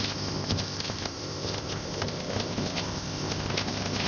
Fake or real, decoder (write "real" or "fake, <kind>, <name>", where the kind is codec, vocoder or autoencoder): fake, codec, ZipCodec